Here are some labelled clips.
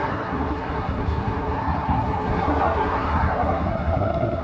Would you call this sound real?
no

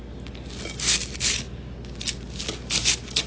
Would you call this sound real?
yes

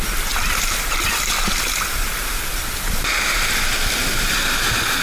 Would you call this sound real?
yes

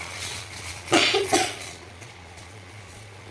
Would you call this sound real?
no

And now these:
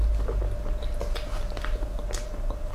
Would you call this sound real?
yes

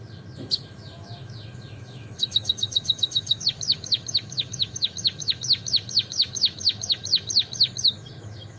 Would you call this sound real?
no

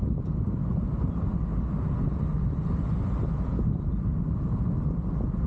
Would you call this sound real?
yes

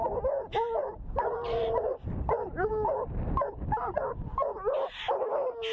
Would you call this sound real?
yes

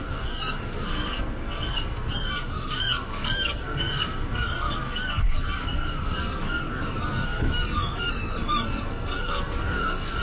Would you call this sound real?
no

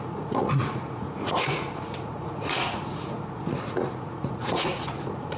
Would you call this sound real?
no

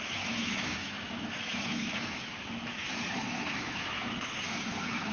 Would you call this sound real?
no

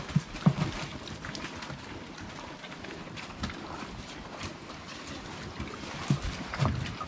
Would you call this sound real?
yes